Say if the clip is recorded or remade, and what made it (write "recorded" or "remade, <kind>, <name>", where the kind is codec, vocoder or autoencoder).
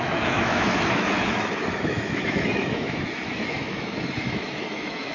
remade, autoencoder, DAC-VAE